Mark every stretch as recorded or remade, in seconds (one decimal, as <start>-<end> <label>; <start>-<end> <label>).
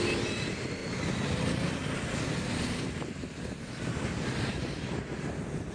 0.0-0.8 remade; 0.8-1.4 recorded; 1.4-1.8 remade; 1.8-3.1 recorded; 3.1-5.7 remade